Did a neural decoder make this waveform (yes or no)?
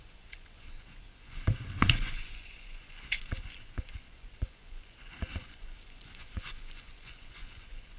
yes